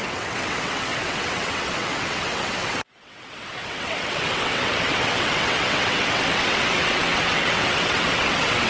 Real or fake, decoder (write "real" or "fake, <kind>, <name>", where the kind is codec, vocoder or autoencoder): fake, vocoder, WaveNeXt